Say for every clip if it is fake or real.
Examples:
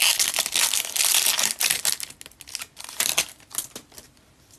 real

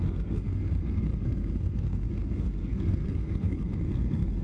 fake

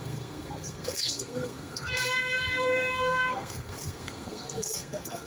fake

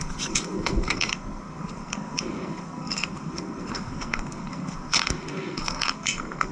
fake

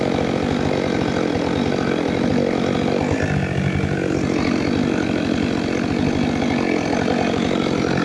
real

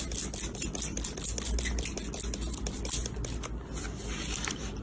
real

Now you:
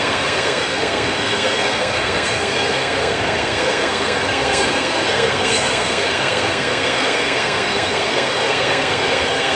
fake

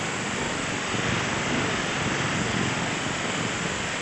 real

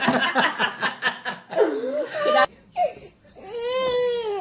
real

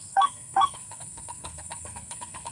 fake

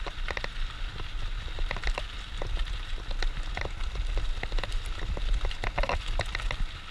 real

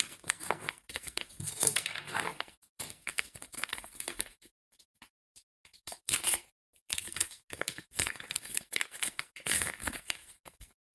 fake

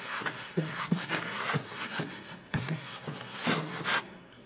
fake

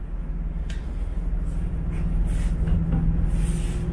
real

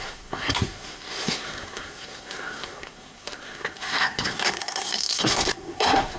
fake